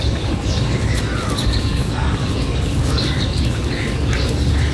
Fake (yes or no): yes